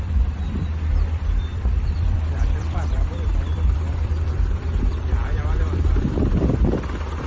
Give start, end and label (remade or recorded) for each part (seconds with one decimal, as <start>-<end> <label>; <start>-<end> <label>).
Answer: 0.0-7.3 remade